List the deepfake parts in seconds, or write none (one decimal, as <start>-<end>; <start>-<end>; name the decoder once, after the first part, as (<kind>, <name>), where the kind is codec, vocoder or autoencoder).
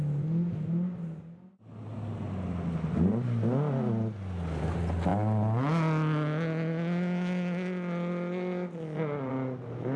none